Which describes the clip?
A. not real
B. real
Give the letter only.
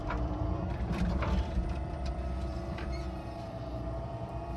A